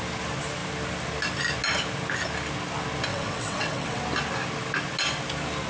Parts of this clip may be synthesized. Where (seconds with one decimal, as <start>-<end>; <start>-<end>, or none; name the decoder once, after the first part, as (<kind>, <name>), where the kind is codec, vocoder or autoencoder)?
3.1-4.0 (vocoder, WaveNeXt)